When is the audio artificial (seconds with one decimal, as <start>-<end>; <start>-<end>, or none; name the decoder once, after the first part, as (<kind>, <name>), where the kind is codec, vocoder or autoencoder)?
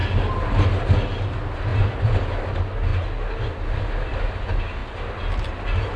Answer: none